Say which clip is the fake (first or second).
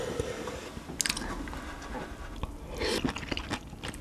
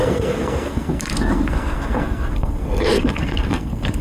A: second